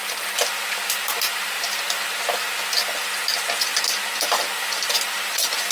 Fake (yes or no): no